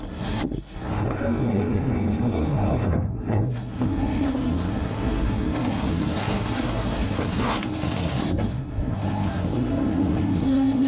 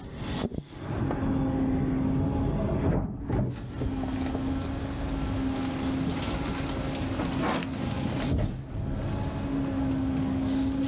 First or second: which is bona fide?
second